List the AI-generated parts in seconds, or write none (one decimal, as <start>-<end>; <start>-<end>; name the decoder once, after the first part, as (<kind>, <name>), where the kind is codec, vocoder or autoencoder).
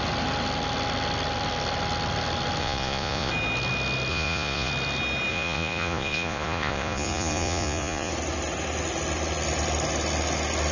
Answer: 2.6-3.3 (vocoder, Vocos); 4.1-4.7; 5.3-8.1